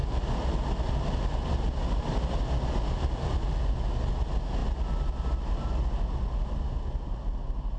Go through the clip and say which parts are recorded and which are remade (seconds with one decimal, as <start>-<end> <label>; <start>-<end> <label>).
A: 0.0-7.8 recorded